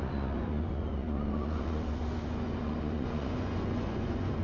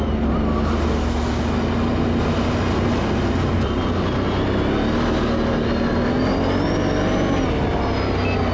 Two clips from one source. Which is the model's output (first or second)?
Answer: first